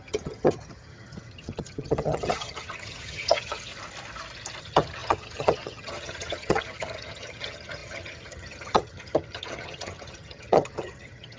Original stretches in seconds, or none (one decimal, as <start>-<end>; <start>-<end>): 3.7-4.6

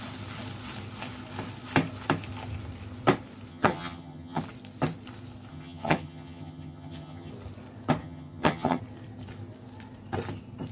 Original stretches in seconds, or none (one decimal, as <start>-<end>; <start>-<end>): 0.0-3.5; 4.4-5.5; 7.3-8.0; 8.8-10.7

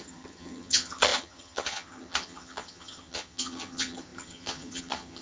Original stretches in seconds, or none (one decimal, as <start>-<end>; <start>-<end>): none

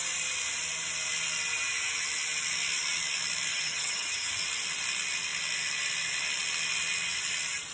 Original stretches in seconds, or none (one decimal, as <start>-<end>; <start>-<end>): 0.0-3.5; 4.3-7.7